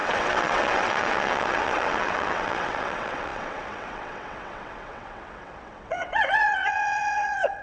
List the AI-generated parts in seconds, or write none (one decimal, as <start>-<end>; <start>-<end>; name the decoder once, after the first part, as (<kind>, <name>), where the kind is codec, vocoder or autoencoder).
0.0-7.6 (vocoder, WaveNeXt)